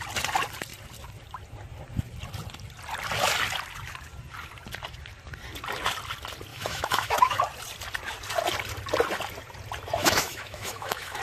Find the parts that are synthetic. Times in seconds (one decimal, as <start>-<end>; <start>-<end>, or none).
6.5-7.4; 10.0-11.2